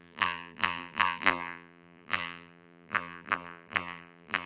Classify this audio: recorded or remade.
remade